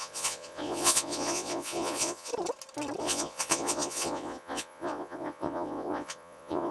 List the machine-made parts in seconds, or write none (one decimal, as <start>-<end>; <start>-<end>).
0.0-2.3; 3.0-6.7